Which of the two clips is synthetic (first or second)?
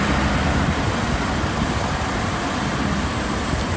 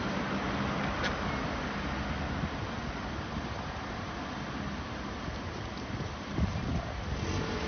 first